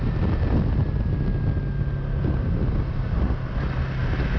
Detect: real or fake real